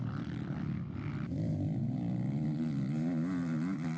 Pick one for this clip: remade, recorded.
recorded